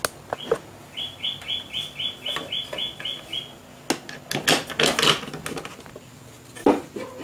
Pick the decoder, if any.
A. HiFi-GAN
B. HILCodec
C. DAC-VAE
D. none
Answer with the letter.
D